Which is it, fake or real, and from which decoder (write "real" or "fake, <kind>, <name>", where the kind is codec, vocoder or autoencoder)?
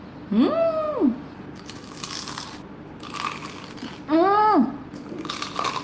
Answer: real